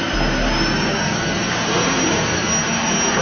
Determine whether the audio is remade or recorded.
recorded